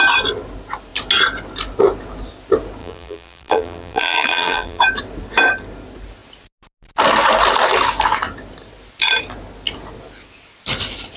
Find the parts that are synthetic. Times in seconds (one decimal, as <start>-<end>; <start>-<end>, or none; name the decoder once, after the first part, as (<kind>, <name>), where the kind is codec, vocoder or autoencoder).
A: 2.8-4.8 (vocoder, BigVGAN v2)